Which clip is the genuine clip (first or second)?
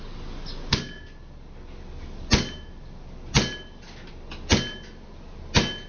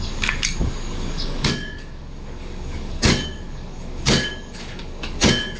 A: first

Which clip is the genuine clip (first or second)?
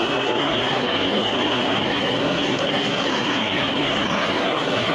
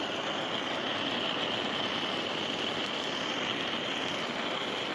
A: second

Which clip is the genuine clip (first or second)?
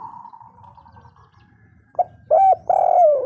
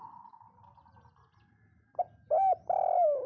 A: second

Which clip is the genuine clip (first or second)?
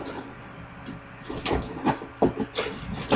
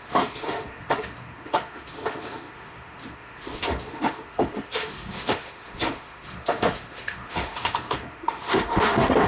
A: first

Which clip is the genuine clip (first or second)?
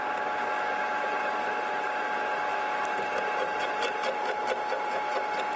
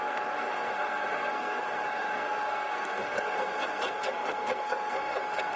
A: first